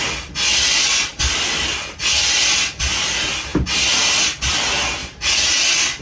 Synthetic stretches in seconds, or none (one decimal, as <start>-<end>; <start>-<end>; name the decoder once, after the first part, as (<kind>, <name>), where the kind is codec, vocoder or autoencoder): 5.0-5.5 (vocoder, BigVGAN v2)